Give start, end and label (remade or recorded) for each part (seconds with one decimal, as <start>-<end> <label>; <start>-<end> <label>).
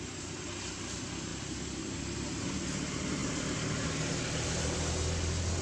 0.0-1.3 recorded; 1.3-2.0 remade; 2.0-5.6 recorded